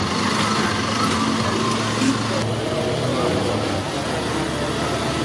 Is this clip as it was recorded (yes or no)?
yes